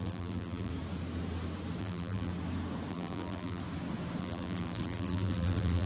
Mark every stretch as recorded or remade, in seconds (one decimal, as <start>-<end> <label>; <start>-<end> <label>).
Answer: 0.0-0.7 remade; 0.7-1.8 recorded; 1.8-2.3 remade; 2.3-2.9 recorded; 2.9-3.6 remade; 3.6-4.2 recorded; 4.2-5.9 remade